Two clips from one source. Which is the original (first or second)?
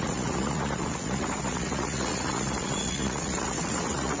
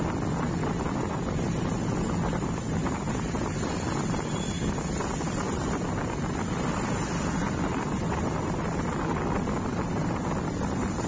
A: second